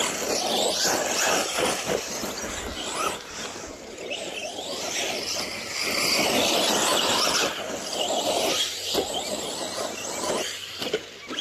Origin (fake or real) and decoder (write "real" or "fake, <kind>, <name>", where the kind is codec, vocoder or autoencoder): real